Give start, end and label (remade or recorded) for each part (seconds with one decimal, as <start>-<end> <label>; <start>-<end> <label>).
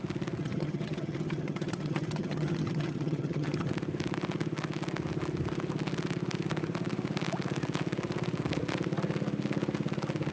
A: 0.0-0.4 recorded; 0.4-3.7 remade; 3.7-10.3 recorded